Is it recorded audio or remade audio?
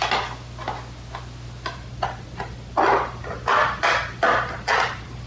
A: recorded